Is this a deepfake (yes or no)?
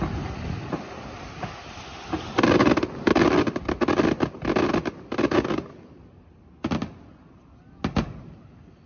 no